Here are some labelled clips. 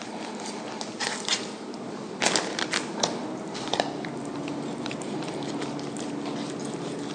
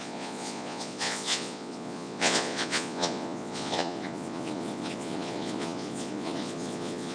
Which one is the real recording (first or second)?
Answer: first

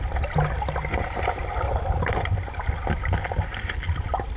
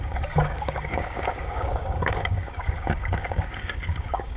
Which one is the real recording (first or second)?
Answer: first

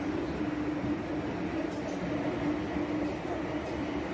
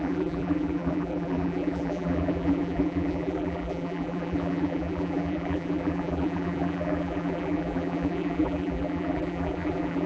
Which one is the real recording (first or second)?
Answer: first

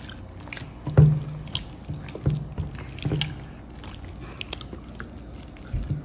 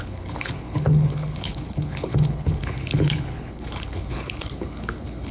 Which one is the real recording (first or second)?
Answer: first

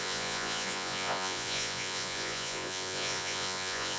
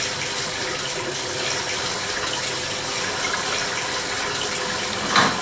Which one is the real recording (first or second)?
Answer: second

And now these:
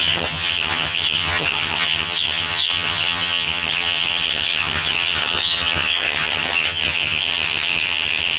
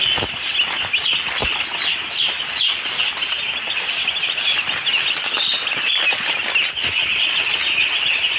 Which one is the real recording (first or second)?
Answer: second